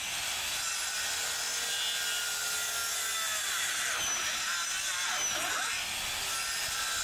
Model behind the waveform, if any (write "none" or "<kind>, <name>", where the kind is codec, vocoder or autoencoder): none